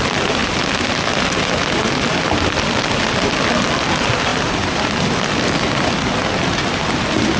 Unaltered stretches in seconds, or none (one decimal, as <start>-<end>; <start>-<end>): 0.0-4.3; 6.2-7.4